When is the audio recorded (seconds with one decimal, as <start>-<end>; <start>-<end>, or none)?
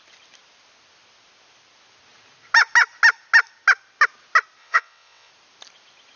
0.0-4.6; 5.3-6.2